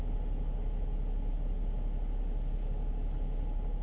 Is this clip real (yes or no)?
yes